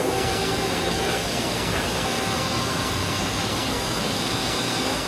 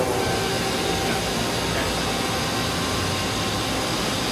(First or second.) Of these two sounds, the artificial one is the first